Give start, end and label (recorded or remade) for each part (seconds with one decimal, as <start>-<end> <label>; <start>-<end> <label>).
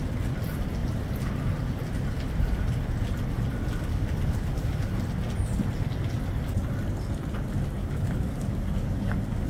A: 0.0-3.9 recorded; 3.9-4.9 remade; 4.9-7.8 recorded; 7.8-9.5 remade